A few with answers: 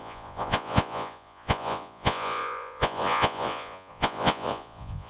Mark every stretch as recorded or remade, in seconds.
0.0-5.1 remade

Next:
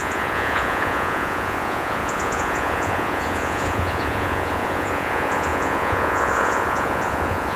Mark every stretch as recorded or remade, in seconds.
0.0-7.6 remade